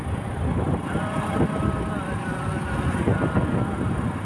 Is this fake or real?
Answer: real